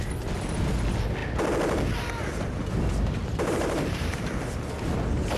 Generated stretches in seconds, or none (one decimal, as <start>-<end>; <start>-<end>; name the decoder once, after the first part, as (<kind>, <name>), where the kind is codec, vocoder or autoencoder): 3.2-4.3 (vocoder, BigVGAN v2)